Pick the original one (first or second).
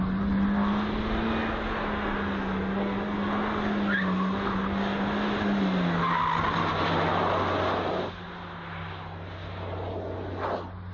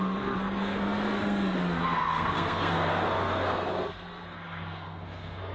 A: first